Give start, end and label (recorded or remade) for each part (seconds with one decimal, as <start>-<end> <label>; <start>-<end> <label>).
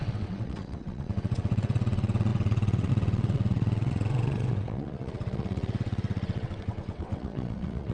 0.0-7.9 remade